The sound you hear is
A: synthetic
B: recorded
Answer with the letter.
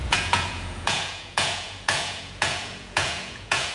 A